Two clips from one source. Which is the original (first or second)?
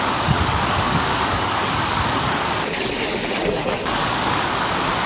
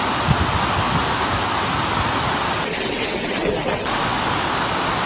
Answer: second